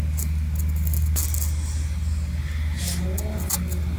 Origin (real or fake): real